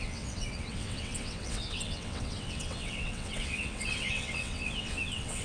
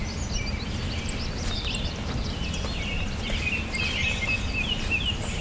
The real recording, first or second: second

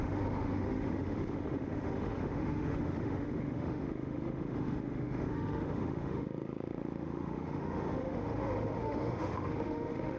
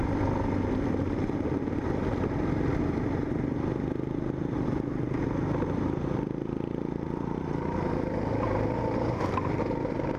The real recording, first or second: second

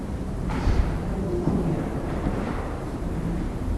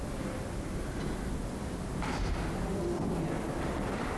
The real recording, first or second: second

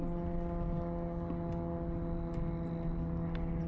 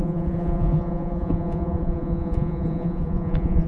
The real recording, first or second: first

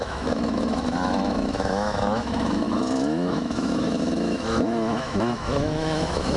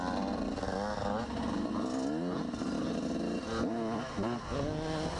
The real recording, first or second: second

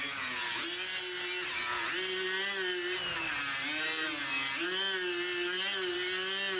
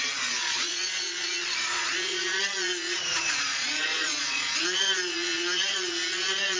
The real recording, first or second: first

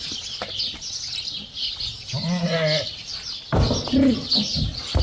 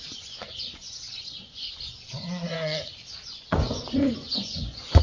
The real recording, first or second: first